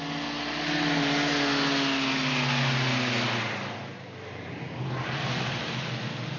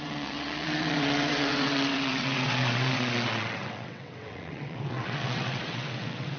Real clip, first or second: first